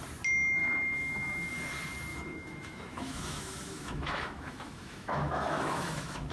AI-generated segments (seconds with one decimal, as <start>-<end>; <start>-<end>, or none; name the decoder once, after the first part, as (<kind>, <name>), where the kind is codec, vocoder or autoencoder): 0.6-1.5 (autoencoder, DAC-VAE); 2.1-6.3